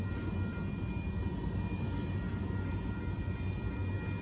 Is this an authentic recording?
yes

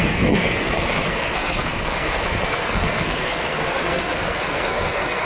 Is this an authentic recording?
no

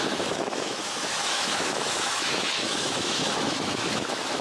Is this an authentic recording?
no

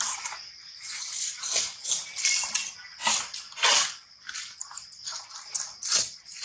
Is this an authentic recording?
yes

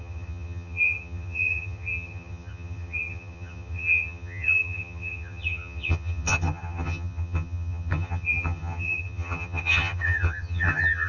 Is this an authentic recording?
no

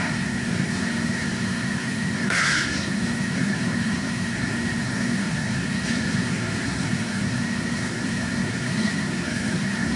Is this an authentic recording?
no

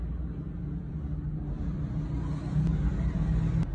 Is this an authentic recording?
yes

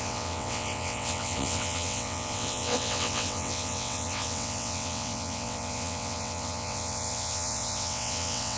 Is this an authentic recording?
no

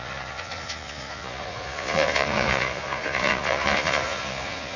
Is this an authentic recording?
no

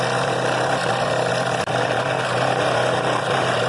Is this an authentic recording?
yes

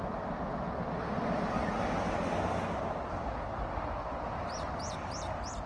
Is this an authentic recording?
yes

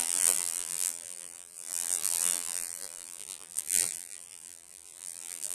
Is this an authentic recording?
no